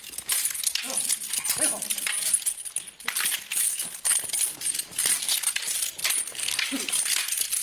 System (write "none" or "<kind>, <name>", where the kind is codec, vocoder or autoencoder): none